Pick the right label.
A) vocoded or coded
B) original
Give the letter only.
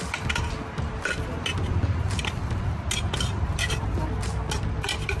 B